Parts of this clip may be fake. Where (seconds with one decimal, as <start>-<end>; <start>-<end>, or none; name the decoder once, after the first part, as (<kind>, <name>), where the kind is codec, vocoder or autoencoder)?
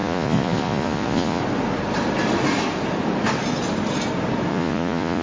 0.0-1.4 (vocoder, Vocos); 4.5-5.2